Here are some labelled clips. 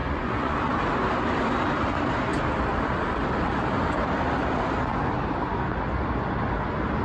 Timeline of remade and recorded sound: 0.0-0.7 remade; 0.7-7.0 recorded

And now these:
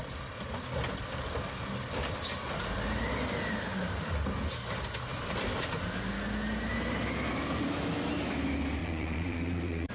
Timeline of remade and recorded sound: 0.0-8.8 recorded; 8.8-9.9 remade

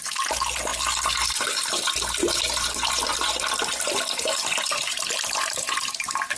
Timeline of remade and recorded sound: 0.0-6.4 recorded